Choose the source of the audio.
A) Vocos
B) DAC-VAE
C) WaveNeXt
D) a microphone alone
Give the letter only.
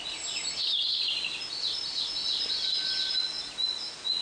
D